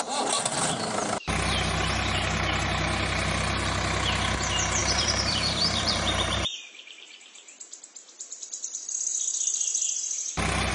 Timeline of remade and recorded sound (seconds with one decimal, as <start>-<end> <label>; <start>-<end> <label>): 0.0-4.8 recorded; 4.8-7.8 remade; 7.8-10.7 recorded